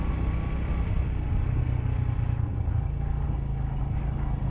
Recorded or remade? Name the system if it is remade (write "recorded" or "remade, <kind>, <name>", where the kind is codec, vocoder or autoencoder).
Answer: recorded